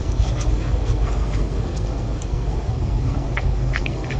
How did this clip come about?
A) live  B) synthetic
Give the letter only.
B